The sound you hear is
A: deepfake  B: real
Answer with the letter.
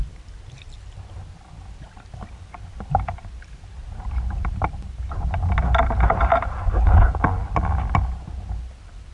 B